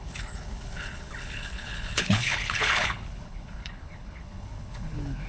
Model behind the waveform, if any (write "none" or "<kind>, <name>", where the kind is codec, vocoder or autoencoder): codec, HILCodec